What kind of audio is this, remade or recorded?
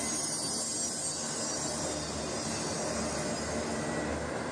recorded